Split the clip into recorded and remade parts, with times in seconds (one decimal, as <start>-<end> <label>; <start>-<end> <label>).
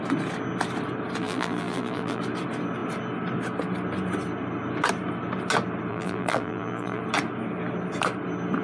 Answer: 0.0-1.2 recorded; 1.2-2.2 remade; 2.2-5.9 recorded; 5.9-7.0 remade; 7.0-8.6 recorded